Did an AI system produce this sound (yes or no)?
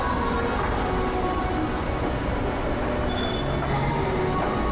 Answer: no